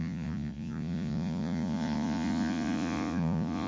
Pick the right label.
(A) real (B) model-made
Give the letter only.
B